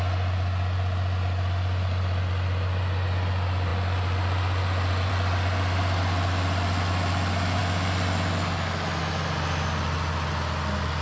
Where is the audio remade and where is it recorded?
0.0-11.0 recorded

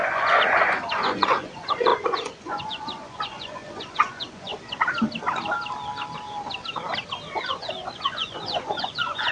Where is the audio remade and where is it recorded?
0.0-4.5 remade; 4.5-7.4 recorded; 7.4-9.3 remade

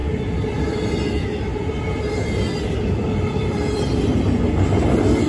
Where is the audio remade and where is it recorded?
0.0-5.3 recorded

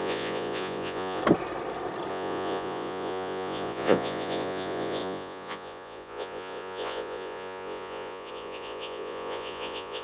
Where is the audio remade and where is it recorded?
0.0-1.2 remade; 1.2-2.1 recorded; 2.1-10.0 remade

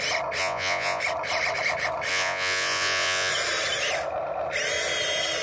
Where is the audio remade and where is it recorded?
0.0-0.4 recorded; 0.4-1.0 remade; 1.0-2.1 recorded; 2.1-3.3 remade; 3.3-5.4 recorded

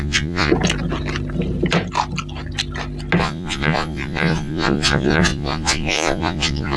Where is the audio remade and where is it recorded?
0.0-0.5 remade; 0.5-3.2 recorded; 3.2-6.8 remade